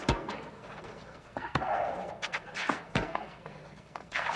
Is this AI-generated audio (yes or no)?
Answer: yes